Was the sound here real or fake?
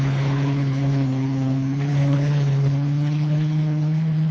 fake